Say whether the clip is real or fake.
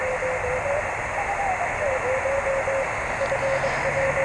real